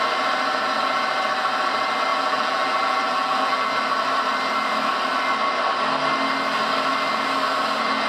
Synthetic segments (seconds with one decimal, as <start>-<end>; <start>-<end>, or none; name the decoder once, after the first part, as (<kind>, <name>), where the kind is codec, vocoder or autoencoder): 2.1-3.7 (vocoder, BigVGAN v2)